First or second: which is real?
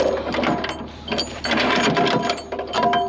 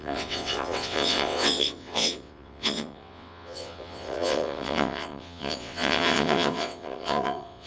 first